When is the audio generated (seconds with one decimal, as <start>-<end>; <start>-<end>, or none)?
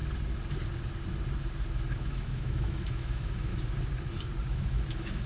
1.9-3.5; 4.5-5.3